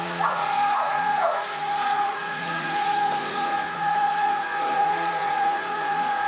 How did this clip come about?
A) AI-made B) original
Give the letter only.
A